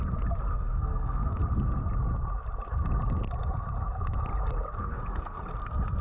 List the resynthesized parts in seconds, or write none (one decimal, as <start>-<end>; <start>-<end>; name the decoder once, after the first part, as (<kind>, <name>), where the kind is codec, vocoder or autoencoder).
0.5-1.4 (codec, SNAC); 4.8-5.4